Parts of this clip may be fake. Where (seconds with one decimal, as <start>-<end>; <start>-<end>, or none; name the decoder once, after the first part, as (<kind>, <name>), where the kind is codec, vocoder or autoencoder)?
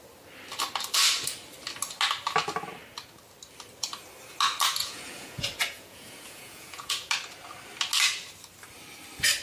4.8-7.1 (vocoder, Vocos)